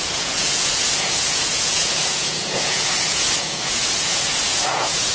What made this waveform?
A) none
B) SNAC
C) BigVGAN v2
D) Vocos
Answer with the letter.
D